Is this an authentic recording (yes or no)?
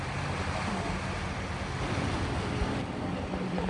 yes